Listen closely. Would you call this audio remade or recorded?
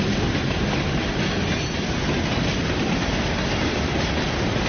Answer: recorded